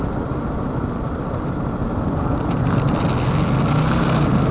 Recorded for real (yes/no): yes